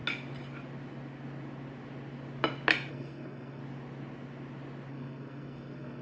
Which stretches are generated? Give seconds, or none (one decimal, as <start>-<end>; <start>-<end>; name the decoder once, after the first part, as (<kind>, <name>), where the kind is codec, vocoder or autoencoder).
2.9-3.6 (codec, SNAC); 4.9-6.0